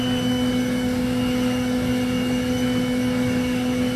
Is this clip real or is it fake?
fake